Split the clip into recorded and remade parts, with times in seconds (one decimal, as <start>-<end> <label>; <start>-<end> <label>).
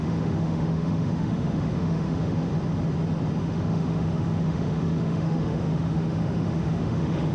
0.0-2.5 remade; 2.5-3.4 recorded; 3.4-7.3 remade